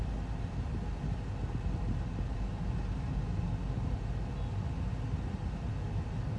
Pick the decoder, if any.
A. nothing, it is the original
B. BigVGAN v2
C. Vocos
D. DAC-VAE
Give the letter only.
A